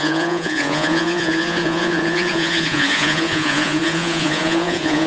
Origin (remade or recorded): remade